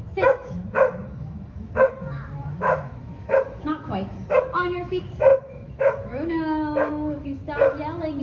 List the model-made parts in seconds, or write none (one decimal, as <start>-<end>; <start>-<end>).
0.0-7.4

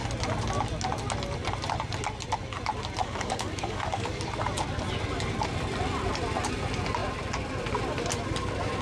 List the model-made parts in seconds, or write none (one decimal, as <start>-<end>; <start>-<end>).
3.0-4.2

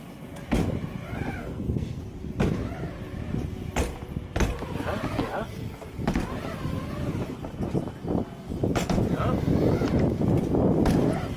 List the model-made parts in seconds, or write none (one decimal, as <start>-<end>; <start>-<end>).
1.4-2.0